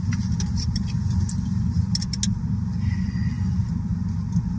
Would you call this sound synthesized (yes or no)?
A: no